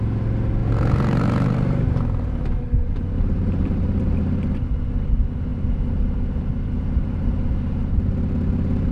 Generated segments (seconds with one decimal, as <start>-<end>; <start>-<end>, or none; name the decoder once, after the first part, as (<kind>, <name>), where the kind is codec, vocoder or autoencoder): 0.6-4.2 (vocoder, BigVGAN v2)